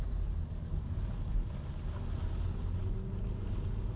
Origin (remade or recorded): recorded